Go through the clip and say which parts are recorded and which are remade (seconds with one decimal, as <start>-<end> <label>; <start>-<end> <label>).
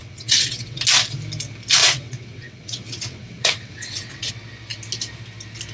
0.0-0.8 remade; 0.8-1.8 recorded; 1.8-4.3 remade; 4.3-5.7 recorded